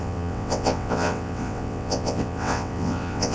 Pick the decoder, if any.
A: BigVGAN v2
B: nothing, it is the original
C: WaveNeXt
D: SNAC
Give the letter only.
C